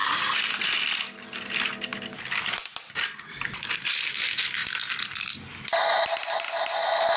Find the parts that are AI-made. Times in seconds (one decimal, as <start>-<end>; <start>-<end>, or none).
none